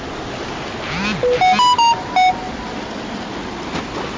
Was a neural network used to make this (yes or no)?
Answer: no